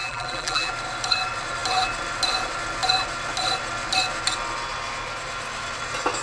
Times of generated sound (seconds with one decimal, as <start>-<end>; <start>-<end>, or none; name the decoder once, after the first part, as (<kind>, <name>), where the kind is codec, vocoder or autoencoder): 0.0-0.7 (vocoder, BigVGAN v2)